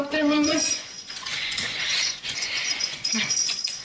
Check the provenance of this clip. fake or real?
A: fake